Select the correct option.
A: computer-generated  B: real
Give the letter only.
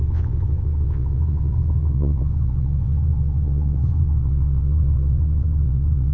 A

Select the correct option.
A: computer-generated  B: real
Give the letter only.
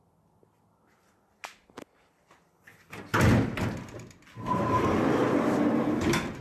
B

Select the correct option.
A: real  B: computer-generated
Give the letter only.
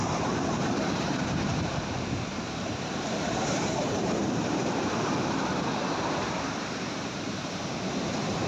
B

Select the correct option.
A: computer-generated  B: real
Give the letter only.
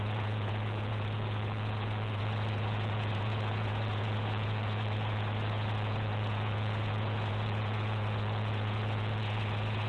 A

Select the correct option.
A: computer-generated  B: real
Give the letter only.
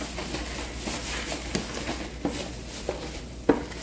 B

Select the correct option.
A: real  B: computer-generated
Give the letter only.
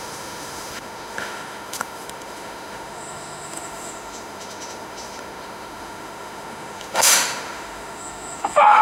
B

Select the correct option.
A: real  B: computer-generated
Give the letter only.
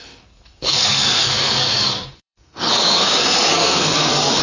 B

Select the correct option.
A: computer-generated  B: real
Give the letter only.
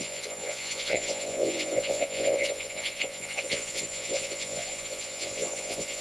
A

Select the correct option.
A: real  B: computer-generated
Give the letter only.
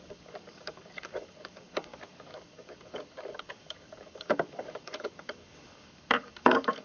B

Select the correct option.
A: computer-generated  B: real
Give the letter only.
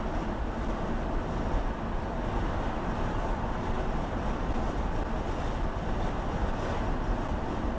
B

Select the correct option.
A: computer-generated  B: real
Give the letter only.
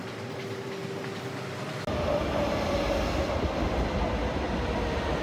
B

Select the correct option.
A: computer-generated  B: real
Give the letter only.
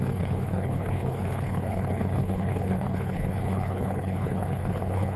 A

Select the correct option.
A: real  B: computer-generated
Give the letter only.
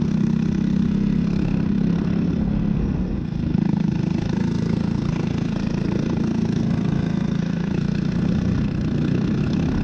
B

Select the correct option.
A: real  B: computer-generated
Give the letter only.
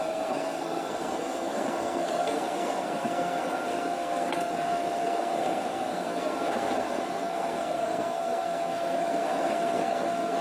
B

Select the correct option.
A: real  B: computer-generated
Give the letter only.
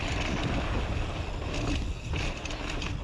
A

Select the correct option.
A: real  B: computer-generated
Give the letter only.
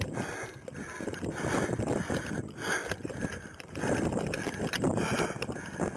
A